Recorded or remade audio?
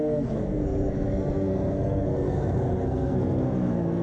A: remade